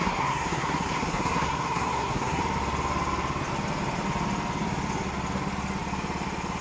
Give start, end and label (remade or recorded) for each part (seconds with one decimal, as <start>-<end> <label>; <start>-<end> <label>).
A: 0.0-2.4 remade; 2.4-6.6 recorded